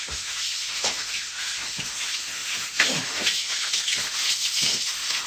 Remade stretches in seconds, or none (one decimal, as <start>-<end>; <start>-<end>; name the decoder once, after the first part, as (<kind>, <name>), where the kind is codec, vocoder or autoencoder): 0.0-5.3 (autoencoder, DAC-VAE)